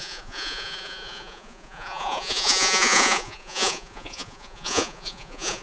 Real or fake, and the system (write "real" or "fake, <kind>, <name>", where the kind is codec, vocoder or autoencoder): fake, vocoder, Vocos